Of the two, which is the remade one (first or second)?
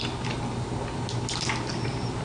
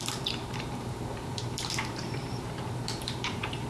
second